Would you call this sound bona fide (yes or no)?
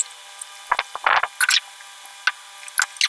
yes